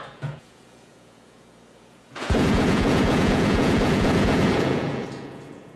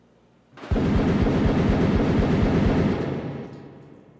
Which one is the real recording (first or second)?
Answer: second